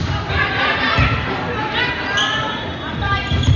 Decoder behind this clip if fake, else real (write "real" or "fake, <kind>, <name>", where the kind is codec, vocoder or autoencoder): real